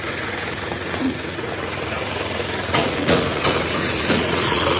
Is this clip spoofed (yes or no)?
yes